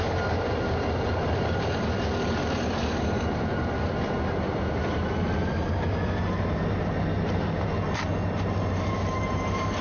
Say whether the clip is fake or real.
fake